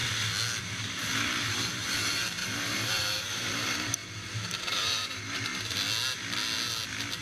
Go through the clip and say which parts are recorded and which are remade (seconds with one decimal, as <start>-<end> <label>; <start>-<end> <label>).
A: 0.0-0.6 recorded; 0.6-4.0 remade; 4.0-4.6 recorded; 4.6-5.5 remade; 5.5-7.2 recorded